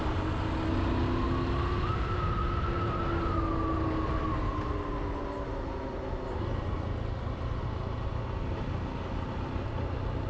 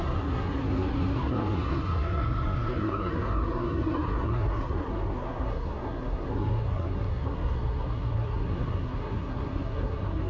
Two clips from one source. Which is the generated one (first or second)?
second